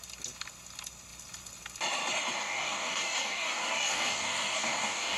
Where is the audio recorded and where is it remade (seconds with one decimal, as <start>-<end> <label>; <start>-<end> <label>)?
0.0-2.4 recorded; 2.4-5.2 remade